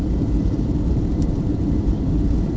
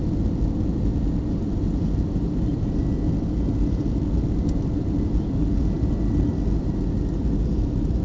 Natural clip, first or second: second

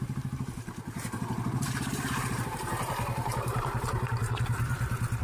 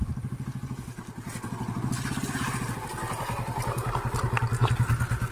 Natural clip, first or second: second